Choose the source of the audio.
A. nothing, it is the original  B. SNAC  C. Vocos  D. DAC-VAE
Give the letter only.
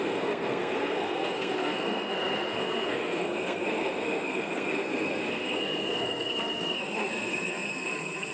B